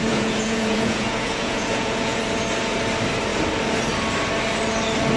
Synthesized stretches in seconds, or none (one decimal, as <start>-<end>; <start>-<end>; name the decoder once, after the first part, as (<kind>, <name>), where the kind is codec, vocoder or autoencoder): 0.0-2.2 (vocoder, Vocos)